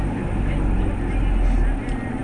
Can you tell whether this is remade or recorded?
recorded